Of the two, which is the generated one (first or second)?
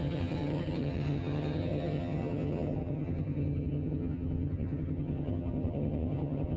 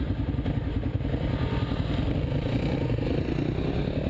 first